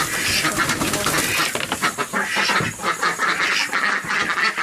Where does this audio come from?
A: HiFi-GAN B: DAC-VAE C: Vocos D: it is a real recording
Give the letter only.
D